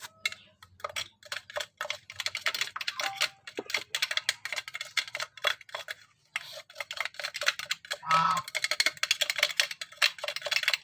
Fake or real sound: real